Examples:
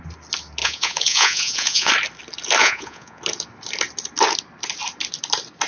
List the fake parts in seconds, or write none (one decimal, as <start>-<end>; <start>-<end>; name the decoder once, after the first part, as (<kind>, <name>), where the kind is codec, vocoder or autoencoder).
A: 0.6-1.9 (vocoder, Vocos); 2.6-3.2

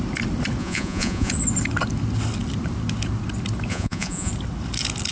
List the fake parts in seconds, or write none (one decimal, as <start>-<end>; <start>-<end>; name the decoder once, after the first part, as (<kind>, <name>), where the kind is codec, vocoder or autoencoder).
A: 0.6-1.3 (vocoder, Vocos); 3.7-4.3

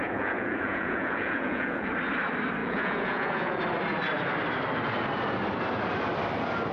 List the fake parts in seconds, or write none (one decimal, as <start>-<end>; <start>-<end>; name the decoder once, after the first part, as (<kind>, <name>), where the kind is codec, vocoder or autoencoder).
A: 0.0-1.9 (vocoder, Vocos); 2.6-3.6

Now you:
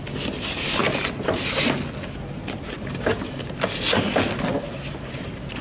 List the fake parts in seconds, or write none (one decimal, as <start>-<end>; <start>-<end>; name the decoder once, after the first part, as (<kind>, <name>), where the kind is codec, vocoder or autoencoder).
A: none

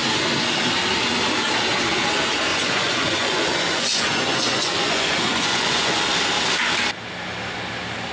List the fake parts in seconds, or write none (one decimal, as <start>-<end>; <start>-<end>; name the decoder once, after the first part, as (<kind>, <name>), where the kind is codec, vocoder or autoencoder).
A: 2.5-6.0 (vocoder, Vocos)